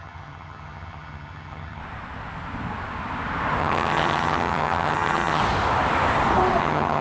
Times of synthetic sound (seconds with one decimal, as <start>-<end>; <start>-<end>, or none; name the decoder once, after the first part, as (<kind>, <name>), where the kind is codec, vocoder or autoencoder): 0.0-1.8 (vocoder, HiFi-GAN); 3.6-5.4; 6.6-7.0